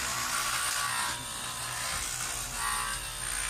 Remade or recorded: recorded